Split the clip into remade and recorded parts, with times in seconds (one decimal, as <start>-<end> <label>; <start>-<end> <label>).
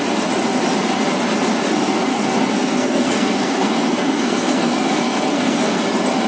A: 0.0-2.1 recorded; 2.1-5.8 remade; 5.8-6.3 recorded